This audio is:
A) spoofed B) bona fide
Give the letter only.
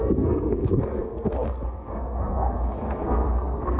A